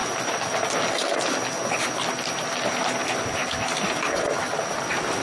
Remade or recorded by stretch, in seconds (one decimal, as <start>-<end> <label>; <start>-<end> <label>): 0.0-5.2 recorded